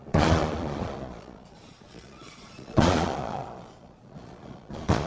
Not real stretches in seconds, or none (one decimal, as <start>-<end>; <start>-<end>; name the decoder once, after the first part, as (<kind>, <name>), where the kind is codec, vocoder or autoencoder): 0.0-5.1 (vocoder, Vocos)